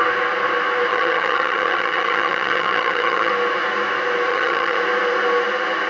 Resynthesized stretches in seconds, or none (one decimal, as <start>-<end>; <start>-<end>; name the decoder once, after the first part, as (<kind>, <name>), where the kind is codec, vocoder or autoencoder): 0.9-3.3 (vocoder, HiFi-GAN); 4.3-4.8